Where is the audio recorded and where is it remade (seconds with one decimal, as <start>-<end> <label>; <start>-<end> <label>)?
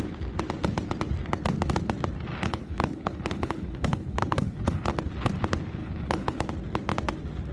0.0-2.4 recorded; 2.4-4.9 remade; 4.9-5.8 recorded; 5.8-6.5 remade; 6.5-7.5 recorded